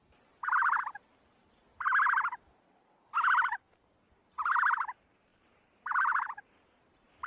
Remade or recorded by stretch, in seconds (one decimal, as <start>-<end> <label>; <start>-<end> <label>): 0.0-5.3 recorded; 5.3-7.3 remade